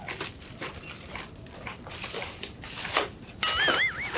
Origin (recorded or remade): recorded